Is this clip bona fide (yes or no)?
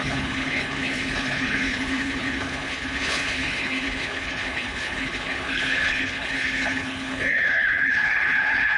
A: no